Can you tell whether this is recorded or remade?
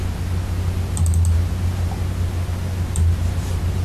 recorded